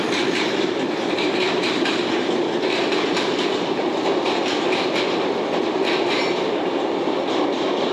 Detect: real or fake real